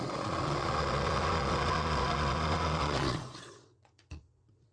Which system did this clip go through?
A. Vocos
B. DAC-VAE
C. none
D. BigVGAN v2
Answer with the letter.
A